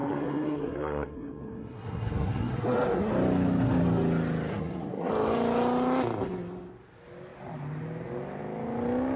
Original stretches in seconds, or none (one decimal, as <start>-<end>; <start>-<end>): 3.1-4.5; 5.1-9.2